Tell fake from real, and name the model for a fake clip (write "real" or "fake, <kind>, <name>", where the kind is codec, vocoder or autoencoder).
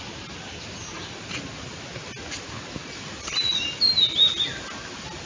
real